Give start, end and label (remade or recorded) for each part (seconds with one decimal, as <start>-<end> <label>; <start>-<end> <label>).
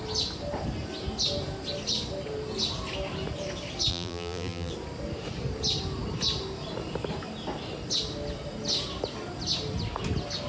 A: 0.0-3.9 recorded; 3.9-4.7 remade; 4.7-10.5 recorded